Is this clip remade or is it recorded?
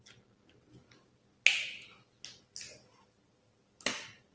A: recorded